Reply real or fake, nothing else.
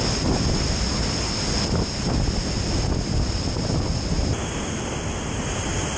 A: real